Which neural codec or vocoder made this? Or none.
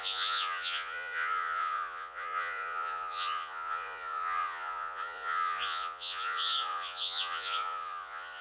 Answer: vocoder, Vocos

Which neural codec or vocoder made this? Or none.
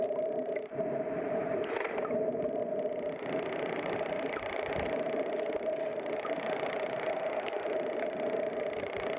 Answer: vocoder, BigVGAN v2